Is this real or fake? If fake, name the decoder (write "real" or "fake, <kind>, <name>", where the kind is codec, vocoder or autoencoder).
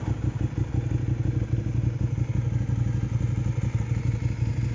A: real